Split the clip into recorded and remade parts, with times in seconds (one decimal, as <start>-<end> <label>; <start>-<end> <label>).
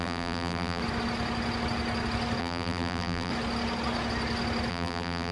0.0-0.8 remade; 0.8-2.4 recorded; 2.4-3.3 remade; 3.3-4.7 recorded; 4.7-5.3 remade